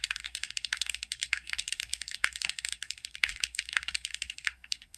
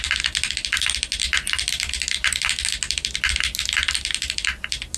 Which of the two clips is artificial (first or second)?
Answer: first